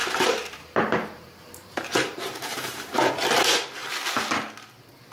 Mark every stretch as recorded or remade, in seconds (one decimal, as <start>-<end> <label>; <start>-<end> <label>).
0.0-3.1 remade; 3.1-5.1 recorded